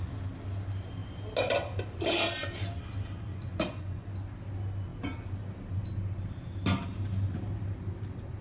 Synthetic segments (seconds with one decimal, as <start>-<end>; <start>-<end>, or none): 3.3-4.1